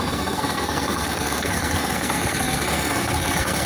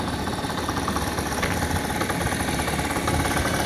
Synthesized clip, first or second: first